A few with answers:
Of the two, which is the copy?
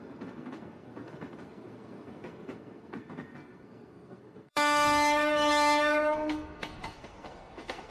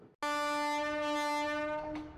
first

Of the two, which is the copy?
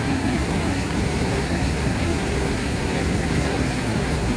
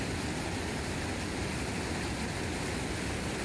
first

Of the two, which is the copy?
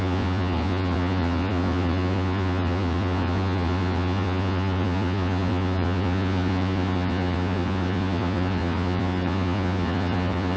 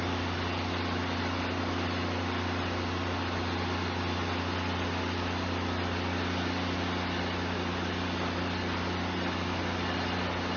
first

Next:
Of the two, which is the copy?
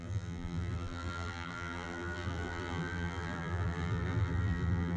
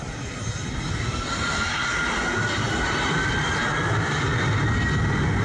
first